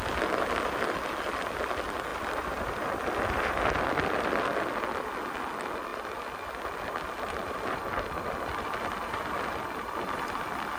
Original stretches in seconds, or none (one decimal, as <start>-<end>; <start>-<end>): 0.0-2.1; 3.5-10.8